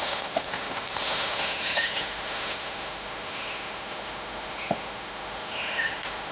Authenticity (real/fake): fake